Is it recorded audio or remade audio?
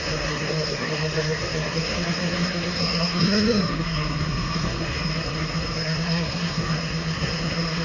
remade